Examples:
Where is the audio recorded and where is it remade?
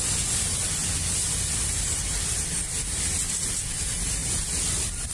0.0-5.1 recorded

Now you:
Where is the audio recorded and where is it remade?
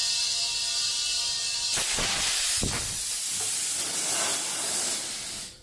0.0-5.6 recorded